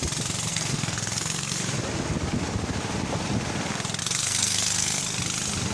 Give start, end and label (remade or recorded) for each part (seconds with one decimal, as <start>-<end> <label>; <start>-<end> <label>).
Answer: 0.0-0.5 recorded; 0.5-1.6 remade; 1.6-4.0 recorded; 4.0-5.0 remade; 5.0-5.7 recorded